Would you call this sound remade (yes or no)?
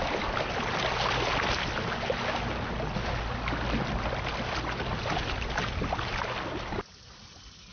no